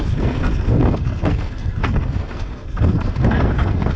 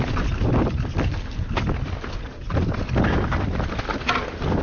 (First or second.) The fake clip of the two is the first